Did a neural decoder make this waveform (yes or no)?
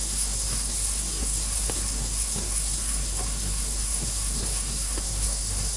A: yes